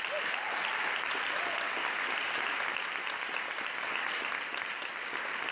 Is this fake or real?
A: real